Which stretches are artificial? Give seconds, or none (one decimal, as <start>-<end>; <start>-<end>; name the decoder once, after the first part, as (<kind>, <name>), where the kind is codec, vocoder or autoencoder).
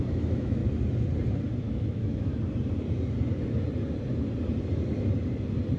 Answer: 0.0-0.6 (autoencoder, DAC-VAE); 1.6-2.3